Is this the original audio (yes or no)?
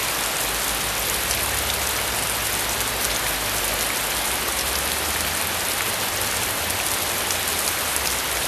yes